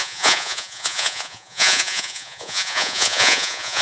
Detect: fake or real fake